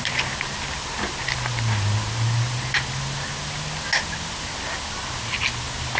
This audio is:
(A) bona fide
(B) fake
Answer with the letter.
A